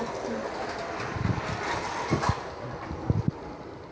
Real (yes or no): yes